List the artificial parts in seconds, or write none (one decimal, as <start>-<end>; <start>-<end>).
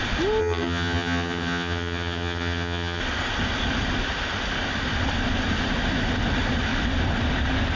0.4-3.0